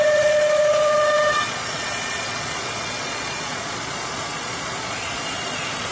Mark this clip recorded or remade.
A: remade